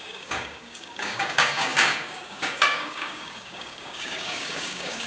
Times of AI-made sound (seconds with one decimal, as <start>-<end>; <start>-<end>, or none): 0.0-5.1